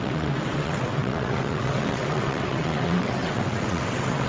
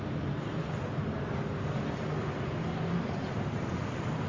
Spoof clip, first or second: first